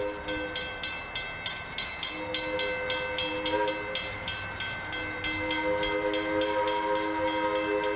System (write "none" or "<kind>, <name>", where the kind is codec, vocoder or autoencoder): none